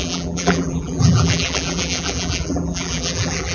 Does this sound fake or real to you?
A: fake